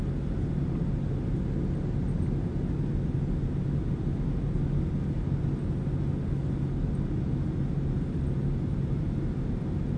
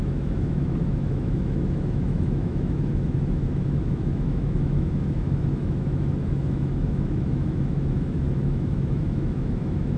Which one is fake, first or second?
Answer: second